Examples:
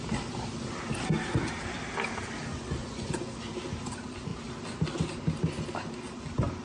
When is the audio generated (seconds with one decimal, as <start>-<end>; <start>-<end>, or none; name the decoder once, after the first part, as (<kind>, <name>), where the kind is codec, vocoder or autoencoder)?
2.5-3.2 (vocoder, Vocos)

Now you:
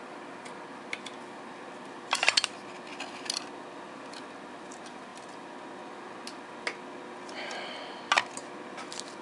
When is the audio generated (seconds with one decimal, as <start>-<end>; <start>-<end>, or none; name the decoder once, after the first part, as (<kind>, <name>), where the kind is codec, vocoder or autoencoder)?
none

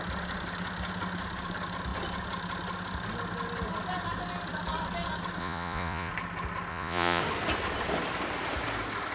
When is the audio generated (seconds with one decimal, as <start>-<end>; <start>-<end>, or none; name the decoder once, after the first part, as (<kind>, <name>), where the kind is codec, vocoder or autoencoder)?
5.4-6.1 (vocoder, Vocos); 6.7-7.2

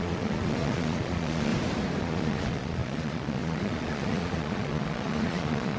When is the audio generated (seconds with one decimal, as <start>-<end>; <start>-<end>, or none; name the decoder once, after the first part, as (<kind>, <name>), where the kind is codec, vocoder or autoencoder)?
0.0-1.5 (vocoder, Vocos); 2.0-5.8